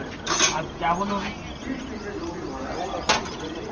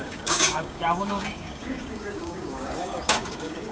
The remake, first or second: second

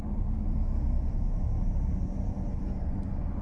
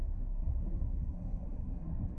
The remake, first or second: second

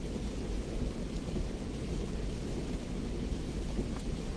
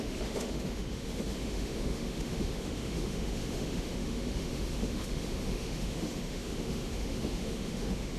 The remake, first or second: second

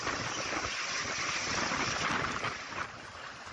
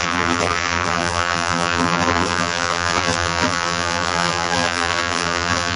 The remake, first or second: second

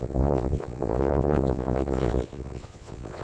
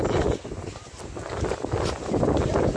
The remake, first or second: first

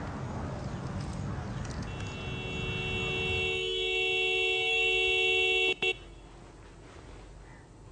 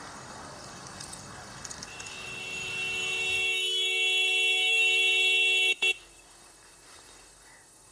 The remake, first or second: second